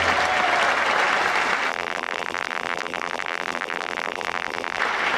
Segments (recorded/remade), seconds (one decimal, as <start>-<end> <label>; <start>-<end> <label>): 0.0-1.7 recorded; 1.7-4.8 remade; 4.8-5.2 recorded